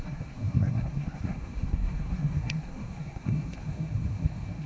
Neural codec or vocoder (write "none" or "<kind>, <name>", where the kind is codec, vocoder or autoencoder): codec, SNAC